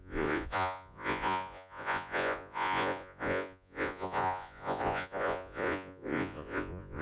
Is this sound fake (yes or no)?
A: yes